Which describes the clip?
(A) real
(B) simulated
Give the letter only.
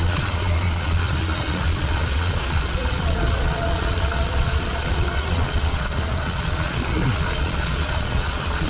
B